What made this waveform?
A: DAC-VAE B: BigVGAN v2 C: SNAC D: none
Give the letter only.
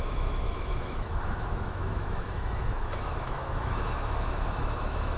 A